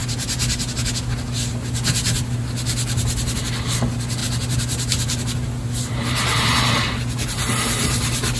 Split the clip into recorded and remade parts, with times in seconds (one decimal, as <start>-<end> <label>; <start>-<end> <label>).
0.0-8.4 recorded